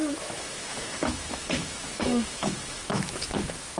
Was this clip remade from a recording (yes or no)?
yes